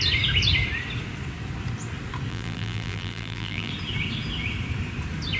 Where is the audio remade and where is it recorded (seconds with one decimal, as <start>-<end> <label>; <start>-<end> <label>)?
0.0-2.3 recorded; 2.3-3.7 remade; 3.7-5.4 recorded